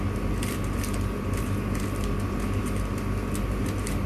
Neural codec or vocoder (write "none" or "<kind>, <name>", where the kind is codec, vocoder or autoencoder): none